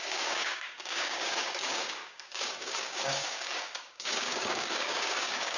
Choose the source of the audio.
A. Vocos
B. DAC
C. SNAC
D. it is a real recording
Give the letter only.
B